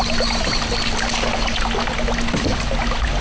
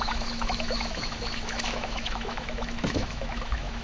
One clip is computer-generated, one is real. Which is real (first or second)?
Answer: first